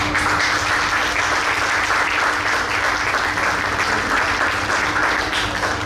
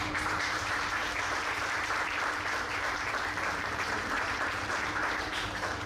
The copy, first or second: second